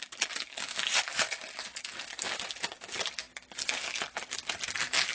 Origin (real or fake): real